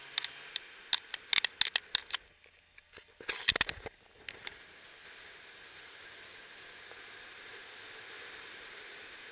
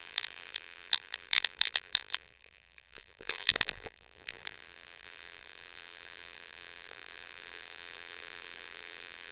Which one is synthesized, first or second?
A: second